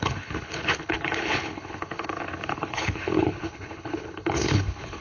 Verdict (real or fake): fake